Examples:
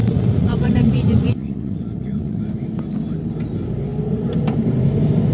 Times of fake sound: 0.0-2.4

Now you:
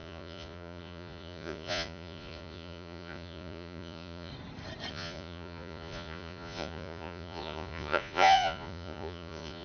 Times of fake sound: 0.0-4.3; 4.9-9.6

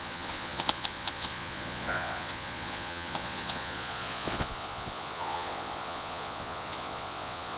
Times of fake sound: 0.0-7.6

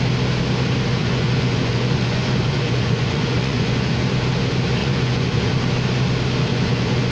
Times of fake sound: 1.0-3.9; 4.8-5.5; 6.5-7.1

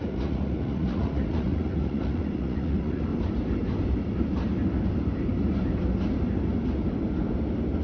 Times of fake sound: 0.0-3.1

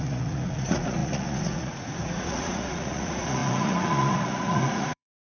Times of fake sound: 0.0-5.2

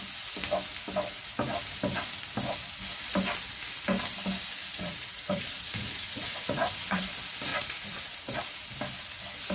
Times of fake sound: 4.6-7.0; 7.5-8.3